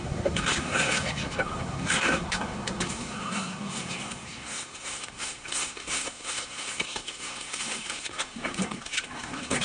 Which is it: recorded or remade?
remade